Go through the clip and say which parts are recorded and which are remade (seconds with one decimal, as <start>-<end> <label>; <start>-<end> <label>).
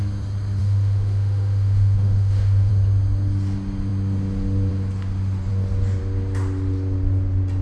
0.0-0.6 recorded; 0.6-2.7 remade; 2.7-7.6 recorded